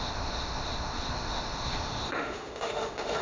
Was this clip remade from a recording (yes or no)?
yes